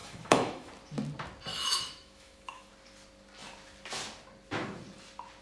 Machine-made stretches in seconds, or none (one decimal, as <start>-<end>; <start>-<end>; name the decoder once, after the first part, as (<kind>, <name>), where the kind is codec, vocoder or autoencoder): 0.0-0.7 (autoencoder, DAC-VAE); 1.5-2.7